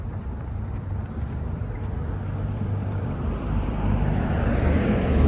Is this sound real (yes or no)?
no